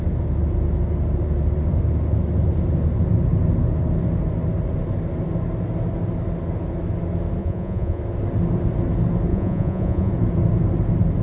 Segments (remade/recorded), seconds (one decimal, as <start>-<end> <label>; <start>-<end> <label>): 0.0-7.4 recorded; 7.4-8.0 remade; 8.0-9.3 recorded; 9.3-10.1 remade; 10.1-11.2 recorded